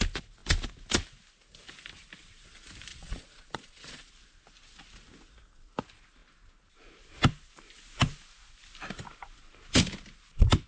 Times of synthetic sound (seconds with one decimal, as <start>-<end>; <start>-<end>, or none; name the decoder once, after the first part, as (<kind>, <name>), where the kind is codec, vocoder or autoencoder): 2.9-4.1 (vocoder, Vocos)